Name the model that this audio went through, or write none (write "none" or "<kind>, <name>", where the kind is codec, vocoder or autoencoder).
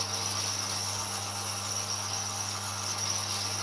none